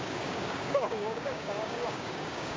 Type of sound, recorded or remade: remade